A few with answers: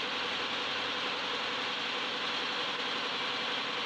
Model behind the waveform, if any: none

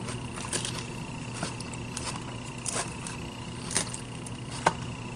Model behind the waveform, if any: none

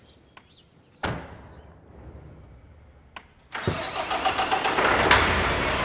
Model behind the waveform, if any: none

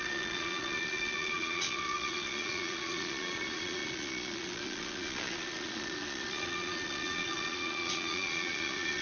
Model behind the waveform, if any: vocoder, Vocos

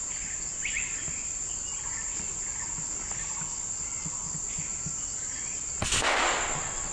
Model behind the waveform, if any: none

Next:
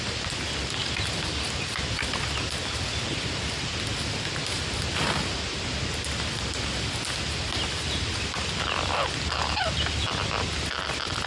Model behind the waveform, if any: none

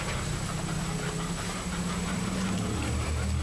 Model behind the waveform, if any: none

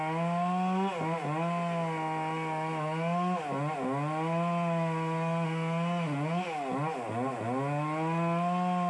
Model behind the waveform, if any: none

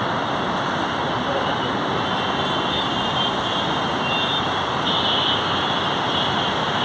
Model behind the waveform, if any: none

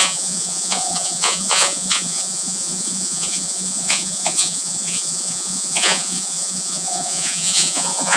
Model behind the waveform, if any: vocoder, Vocos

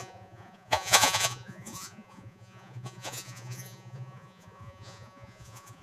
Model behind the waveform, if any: vocoder, Vocos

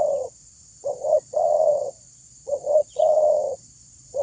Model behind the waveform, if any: vocoder, Vocos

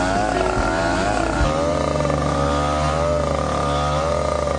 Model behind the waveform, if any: none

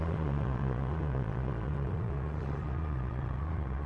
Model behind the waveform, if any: vocoder, Vocos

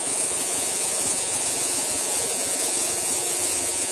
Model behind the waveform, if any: vocoder, Vocos